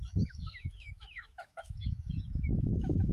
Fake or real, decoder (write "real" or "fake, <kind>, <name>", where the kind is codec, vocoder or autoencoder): fake, autoencoder, DAC-VAE